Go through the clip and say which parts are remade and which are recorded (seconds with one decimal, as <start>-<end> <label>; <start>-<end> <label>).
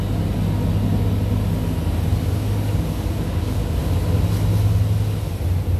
0.0-2.1 recorded; 2.1-3.8 remade; 3.8-5.8 recorded